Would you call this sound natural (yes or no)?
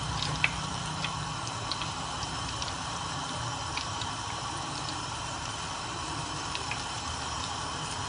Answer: no